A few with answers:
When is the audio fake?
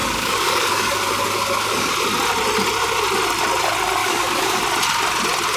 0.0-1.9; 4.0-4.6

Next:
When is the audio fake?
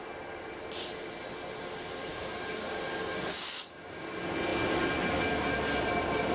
2.1-4.1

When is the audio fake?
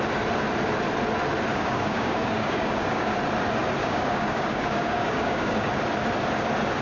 1.5-3.1; 3.8-5.7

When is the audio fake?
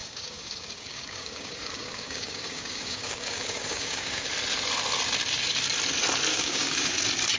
0.0-4.3; 6.3-6.9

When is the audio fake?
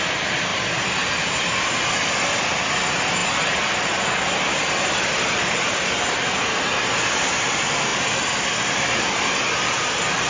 none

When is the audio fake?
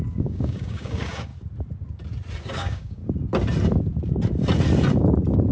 0.0-1.3; 2.4-3.0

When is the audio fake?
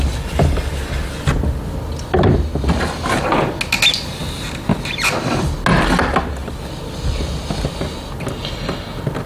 none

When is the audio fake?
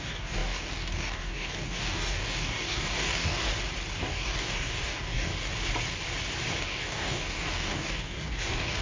0.0-3.5; 4.0-5.3; 6.6-8.8